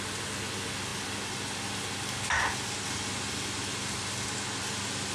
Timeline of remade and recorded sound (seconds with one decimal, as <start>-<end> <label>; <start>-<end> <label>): 0.0-5.1 recorded